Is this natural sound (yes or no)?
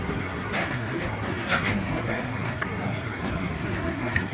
no